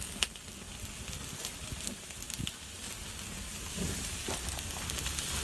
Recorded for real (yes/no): yes